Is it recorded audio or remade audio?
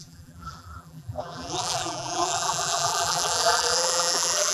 remade